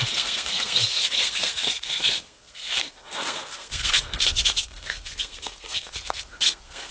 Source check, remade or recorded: remade